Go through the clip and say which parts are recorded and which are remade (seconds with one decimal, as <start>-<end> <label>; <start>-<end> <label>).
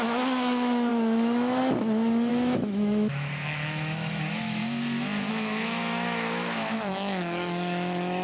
0.0-4.6 remade; 4.6-5.3 recorded; 5.3-8.2 remade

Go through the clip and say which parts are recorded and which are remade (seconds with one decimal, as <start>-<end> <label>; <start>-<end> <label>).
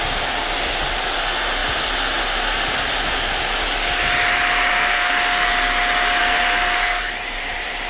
0.0-4.7 recorded; 4.7-5.5 remade; 5.5-6.2 recorded; 6.2-7.0 remade; 7.0-7.9 recorded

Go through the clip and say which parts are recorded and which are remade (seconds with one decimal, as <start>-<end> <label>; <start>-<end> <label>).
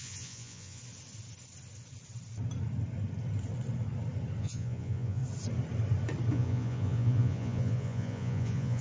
0.0-0.8 remade; 0.8-4.4 recorded; 4.4-5.2 remade; 5.2-6.3 recorded; 6.3-8.8 remade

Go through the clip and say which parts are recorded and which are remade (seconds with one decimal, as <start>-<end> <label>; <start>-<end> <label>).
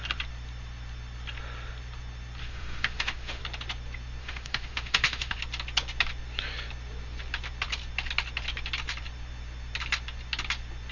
0.0-2.4 recorded; 2.4-3.4 remade; 3.4-4.2 recorded; 4.2-5.4 remade; 5.4-10.9 recorded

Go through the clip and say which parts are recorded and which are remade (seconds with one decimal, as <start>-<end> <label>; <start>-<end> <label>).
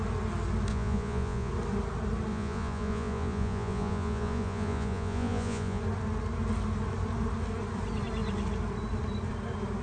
0.0-0.7 recorded; 0.7-1.5 remade; 1.5-2.3 recorded; 2.3-5.8 remade; 5.8-9.8 recorded